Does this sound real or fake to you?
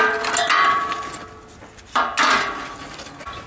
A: real